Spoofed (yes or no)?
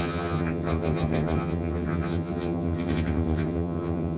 yes